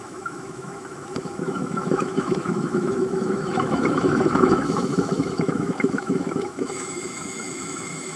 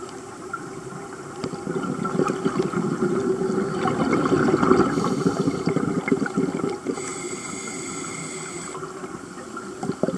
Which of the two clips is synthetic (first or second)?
first